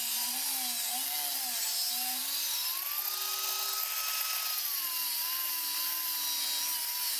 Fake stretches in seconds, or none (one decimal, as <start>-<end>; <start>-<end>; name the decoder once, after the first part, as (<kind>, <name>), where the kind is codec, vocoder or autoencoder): none